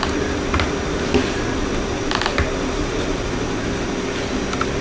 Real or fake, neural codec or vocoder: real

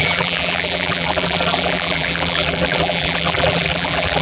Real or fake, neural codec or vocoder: fake, vocoder, BigVGAN v2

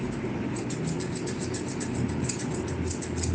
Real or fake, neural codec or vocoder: real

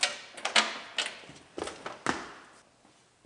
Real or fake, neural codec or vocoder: real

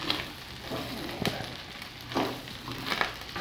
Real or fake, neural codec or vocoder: real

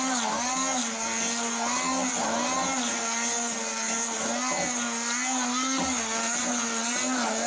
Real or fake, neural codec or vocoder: real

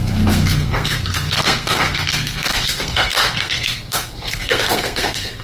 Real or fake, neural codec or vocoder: fake, codec, SNAC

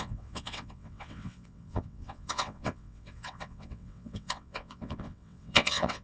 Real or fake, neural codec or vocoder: fake, vocoder, WaveNeXt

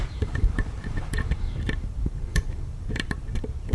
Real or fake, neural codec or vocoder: fake, vocoder, BigVGAN v2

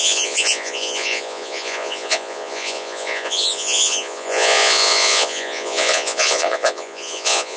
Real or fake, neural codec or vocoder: fake, vocoder, Vocos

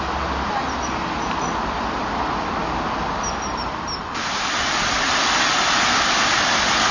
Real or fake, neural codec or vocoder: real